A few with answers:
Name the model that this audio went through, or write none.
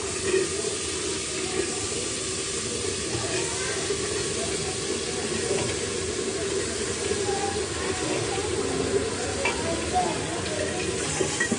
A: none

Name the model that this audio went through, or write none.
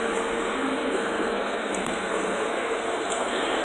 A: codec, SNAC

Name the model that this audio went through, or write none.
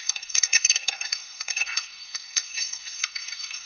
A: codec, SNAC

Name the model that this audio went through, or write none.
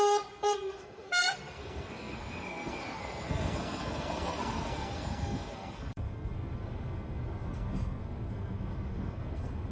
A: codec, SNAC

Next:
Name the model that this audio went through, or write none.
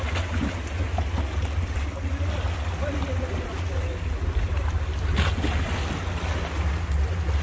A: none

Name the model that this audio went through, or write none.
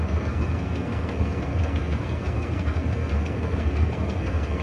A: codec, SNAC